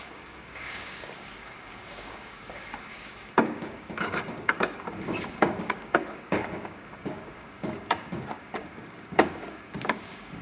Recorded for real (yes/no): no